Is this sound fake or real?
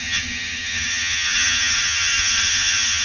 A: fake